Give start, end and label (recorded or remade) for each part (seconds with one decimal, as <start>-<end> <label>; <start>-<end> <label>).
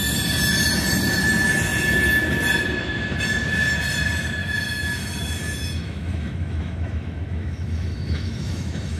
0.0-4.4 recorded; 4.4-9.0 remade